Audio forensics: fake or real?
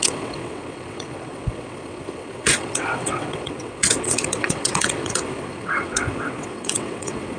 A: fake